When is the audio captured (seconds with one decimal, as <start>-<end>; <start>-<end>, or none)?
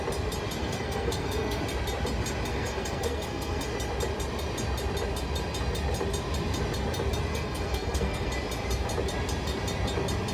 0.0-0.6; 1.6-2.5; 3.6-7.3; 8.3-10.3